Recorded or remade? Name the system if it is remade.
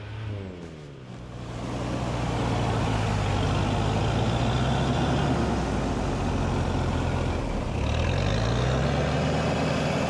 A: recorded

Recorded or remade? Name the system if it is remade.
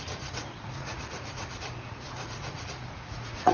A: remade, vocoder, Vocos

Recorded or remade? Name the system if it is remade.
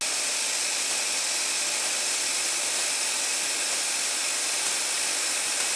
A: recorded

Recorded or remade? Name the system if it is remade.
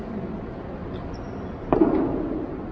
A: recorded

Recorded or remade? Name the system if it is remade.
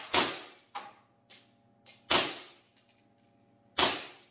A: recorded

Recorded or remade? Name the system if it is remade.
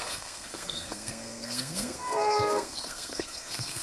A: remade, codec, SNAC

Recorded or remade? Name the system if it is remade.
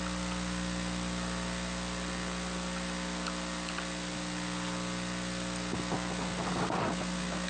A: recorded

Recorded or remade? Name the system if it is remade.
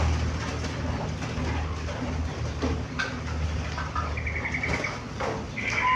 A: recorded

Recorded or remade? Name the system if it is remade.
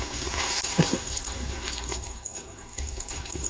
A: remade, codec, SNAC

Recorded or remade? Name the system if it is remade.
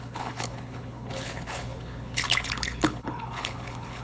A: remade, codec, HILCodec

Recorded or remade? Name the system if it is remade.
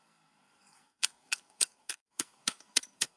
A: remade, codec, SNAC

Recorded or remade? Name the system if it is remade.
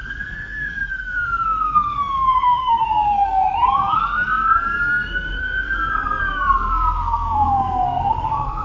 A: remade, codec, SNAC